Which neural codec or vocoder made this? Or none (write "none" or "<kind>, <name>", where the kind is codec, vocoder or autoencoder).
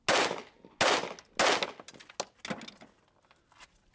none